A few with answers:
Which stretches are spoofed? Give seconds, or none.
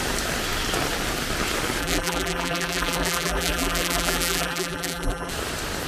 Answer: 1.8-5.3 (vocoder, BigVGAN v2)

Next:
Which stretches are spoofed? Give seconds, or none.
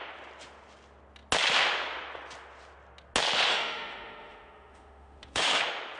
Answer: 3.5-5.6 (autoencoder, DAC-VAE)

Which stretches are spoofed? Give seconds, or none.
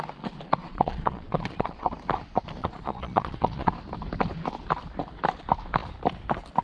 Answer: 0.6-1.9 (vocoder, Vocos); 2.6-3.7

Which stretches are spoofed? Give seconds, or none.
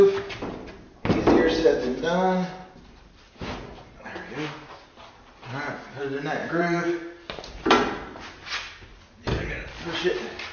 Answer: 6.4-7.6 (vocoder, BigVGAN v2)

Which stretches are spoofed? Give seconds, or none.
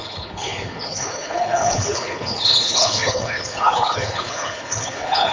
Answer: 0.0-5.3 (codec, HILCodec)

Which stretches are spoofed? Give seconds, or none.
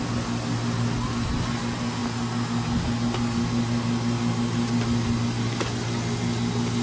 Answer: none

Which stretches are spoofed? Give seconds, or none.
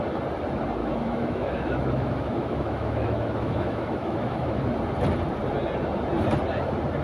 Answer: 0.8-4.7 (autoencoder, DAC-VAE)